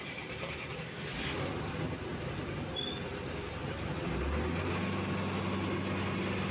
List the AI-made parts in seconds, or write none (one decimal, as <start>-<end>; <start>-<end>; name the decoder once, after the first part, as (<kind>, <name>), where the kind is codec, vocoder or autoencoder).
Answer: none